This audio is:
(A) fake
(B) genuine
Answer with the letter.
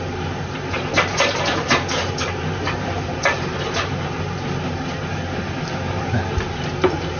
A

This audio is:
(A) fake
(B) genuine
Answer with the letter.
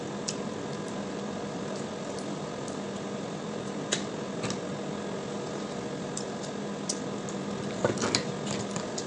B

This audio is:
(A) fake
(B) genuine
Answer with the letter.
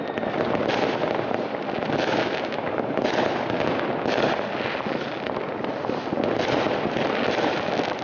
B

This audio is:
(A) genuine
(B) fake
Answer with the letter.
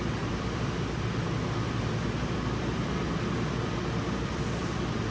B